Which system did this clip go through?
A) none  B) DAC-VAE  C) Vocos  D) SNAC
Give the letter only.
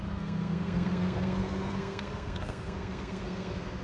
D